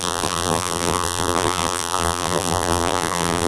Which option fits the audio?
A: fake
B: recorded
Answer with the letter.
A